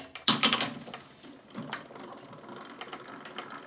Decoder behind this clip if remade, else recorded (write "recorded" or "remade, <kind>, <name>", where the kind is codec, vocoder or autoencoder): recorded